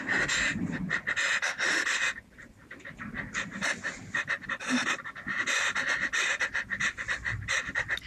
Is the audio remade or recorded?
recorded